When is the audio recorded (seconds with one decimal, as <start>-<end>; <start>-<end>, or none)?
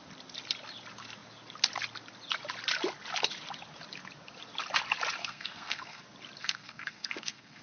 0.0-5.2; 6.0-6.4